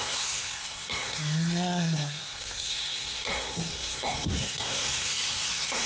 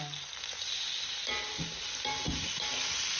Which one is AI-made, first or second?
first